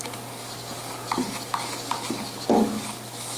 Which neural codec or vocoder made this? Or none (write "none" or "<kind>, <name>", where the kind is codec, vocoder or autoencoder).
codec, DAC